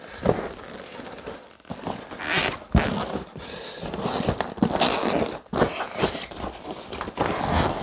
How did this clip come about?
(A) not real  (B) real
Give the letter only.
B